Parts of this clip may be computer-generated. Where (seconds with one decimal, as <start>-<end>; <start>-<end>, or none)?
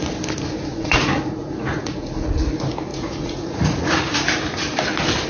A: 0.7-2.3; 2.9-4.1